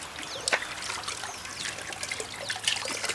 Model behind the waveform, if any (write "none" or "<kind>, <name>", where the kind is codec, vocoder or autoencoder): none